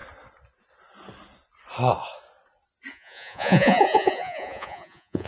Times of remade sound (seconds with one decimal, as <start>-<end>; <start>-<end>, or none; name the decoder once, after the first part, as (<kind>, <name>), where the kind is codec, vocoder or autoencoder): 2.9-5.3 (vocoder, Vocos)